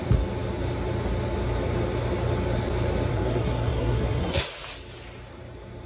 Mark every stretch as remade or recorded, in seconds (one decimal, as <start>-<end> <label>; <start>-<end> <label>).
0.0-3.1 recorded; 3.1-4.4 remade; 4.4-5.9 recorded